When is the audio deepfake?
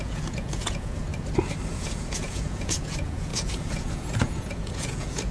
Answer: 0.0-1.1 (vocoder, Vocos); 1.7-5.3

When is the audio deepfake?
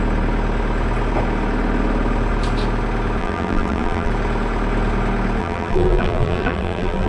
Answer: 3.2-4.1 (vocoder, BigVGAN v2); 5.4-7.1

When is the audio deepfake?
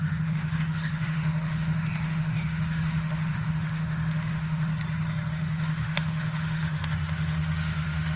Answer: 0.0-4.7 (autoencoder, DAC-VAE); 5.3-8.2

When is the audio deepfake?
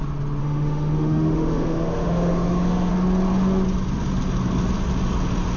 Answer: 0.4-2.9 (autoencoder, DAC-VAE)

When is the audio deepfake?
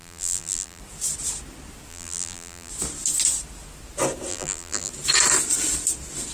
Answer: 0.0-0.8 (vocoder, BigVGAN v2); 1.9-2.7; 4.3-4.9